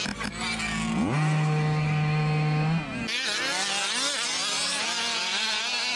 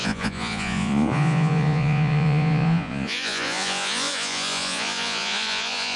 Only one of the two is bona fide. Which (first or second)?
first